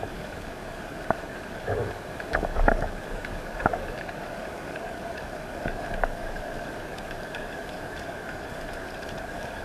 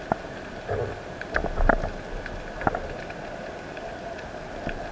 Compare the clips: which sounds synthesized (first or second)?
first